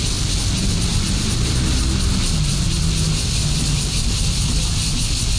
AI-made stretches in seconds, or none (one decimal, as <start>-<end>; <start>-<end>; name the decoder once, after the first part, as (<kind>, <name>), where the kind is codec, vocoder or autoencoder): none